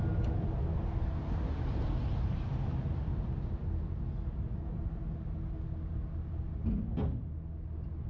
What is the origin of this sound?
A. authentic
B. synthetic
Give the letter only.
A